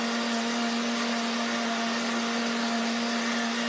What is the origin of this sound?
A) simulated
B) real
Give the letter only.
B